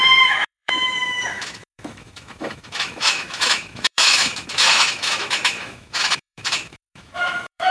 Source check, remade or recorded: remade